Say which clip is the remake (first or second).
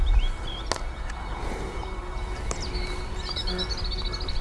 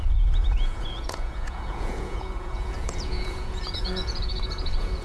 second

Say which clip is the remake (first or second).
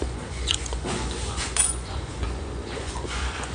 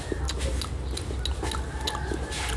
first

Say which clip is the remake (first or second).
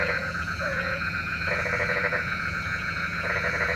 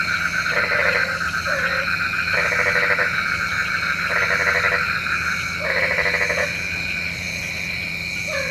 first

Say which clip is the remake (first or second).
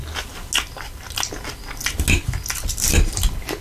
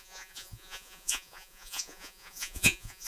second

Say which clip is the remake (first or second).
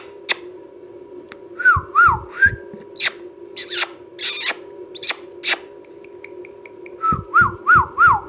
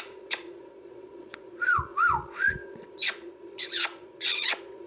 second